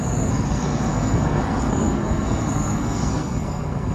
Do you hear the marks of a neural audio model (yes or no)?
yes